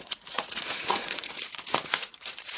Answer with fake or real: fake